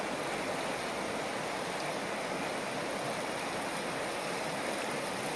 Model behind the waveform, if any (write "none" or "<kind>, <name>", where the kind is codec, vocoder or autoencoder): none